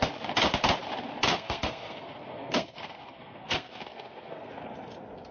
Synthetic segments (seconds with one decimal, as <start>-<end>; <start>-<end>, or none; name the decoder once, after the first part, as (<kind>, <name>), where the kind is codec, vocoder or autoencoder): 1.3-4.5 (codec, SNAC)